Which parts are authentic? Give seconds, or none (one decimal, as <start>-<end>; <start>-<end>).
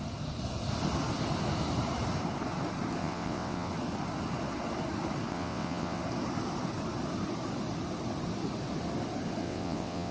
0.0-3.0; 3.7-5.3; 6.0-9.4